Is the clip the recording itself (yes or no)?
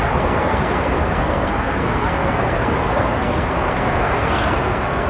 no